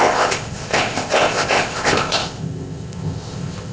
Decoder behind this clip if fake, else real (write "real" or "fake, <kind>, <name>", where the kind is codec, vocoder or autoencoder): fake, codec, ZipCodec